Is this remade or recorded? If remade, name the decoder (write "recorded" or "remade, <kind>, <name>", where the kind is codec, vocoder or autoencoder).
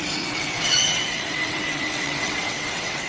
remade, vocoder, WaveNeXt